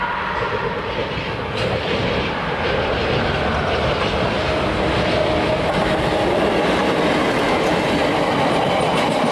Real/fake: real